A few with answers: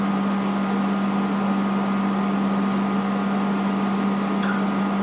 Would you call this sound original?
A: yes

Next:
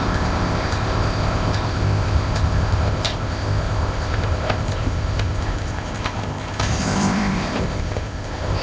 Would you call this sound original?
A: no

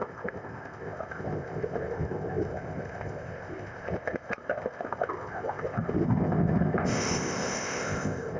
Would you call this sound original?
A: no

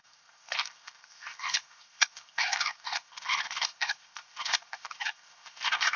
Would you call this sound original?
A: no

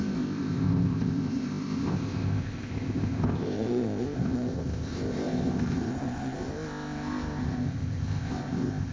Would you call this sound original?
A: no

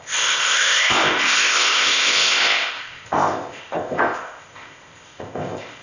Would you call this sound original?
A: no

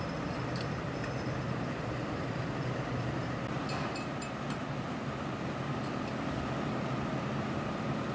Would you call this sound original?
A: yes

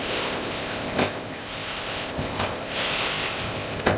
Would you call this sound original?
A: no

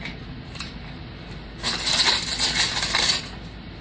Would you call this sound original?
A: yes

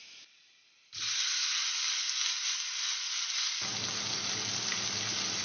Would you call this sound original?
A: yes